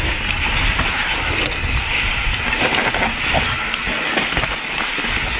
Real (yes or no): yes